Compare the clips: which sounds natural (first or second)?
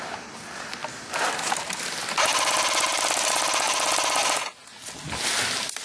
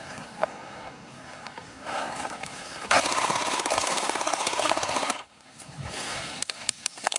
first